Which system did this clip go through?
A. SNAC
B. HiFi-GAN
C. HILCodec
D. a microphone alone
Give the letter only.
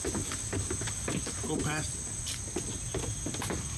D